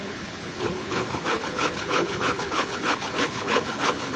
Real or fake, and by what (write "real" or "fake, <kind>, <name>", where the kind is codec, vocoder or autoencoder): fake, codec, HILCodec